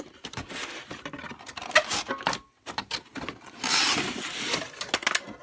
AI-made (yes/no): no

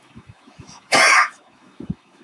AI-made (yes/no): yes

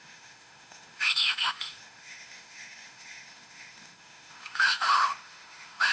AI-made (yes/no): yes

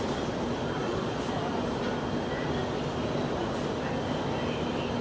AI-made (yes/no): no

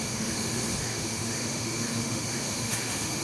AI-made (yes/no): yes